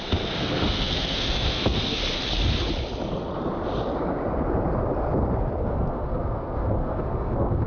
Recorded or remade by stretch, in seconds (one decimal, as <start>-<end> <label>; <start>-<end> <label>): 0.0-2.0 remade; 2.0-5.6 recorded; 5.6-7.7 remade